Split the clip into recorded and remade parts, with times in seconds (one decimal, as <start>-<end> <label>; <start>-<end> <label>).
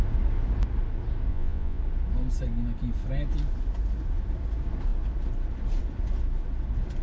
0.0-1.3 recorded; 1.3-1.8 remade; 1.8-7.0 recorded